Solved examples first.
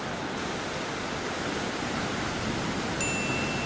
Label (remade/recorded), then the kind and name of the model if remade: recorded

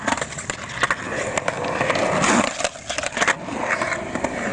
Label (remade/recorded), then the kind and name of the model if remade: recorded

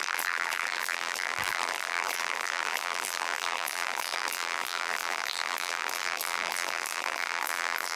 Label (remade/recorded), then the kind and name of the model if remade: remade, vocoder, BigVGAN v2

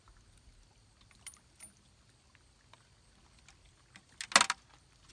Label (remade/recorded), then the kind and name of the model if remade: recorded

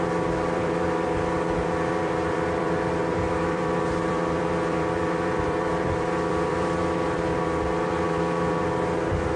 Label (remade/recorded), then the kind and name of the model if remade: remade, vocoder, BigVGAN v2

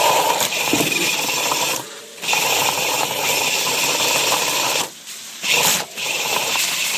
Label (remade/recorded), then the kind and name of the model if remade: remade, vocoder, BigVGAN v2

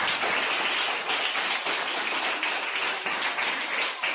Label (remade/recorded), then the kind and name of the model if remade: recorded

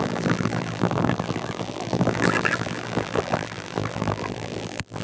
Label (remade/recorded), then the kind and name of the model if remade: remade, vocoder, BigVGAN v2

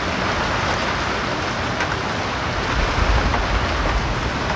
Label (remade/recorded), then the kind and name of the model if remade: recorded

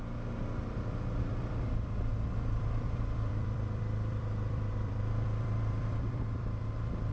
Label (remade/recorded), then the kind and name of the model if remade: remade, vocoder, BigVGAN v2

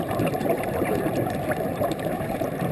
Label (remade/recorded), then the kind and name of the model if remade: remade, vocoder, BigVGAN v2